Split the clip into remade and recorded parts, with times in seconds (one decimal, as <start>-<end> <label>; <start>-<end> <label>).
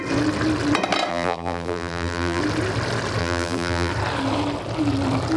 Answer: 0.0-1.1 recorded; 1.1-2.4 remade; 2.4-3.2 recorded; 3.2-3.9 remade; 3.9-5.4 recorded